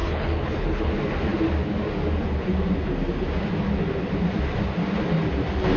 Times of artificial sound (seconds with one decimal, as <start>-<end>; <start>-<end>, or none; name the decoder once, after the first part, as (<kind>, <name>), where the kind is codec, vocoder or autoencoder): 0.0-0.9 (codec, HILCodec)